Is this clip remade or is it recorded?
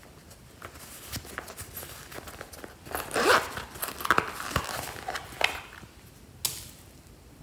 recorded